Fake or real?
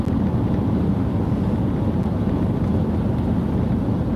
real